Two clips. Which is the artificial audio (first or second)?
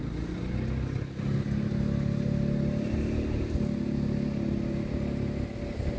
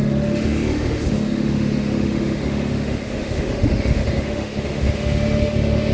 second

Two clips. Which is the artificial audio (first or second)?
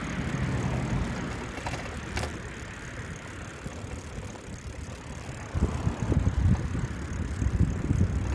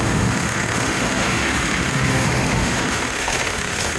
second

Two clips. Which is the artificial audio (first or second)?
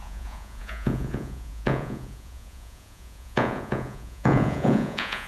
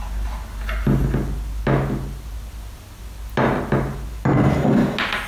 first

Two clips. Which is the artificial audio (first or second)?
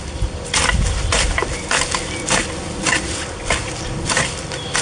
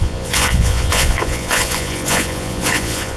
second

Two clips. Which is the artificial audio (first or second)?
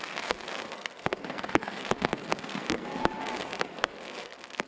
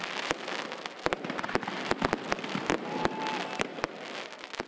first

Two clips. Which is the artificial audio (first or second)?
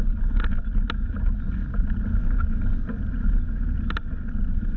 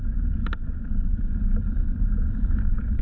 second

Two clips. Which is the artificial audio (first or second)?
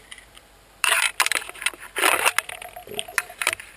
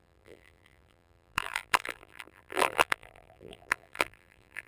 second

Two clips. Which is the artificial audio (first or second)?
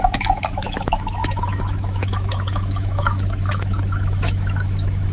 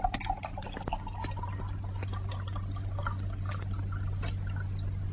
first